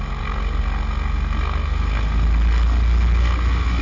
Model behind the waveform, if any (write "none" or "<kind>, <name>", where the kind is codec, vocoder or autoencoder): none